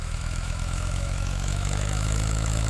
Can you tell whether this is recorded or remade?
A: remade